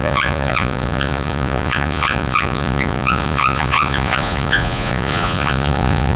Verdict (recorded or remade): remade